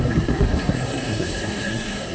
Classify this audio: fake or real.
fake